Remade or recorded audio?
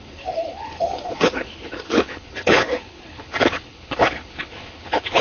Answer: remade